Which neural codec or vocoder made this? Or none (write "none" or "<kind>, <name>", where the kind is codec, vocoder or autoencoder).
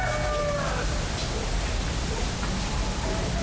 none